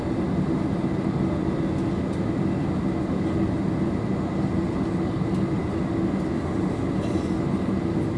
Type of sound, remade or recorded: recorded